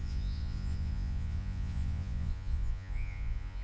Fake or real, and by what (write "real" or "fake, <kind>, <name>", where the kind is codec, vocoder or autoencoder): fake, vocoder, Vocos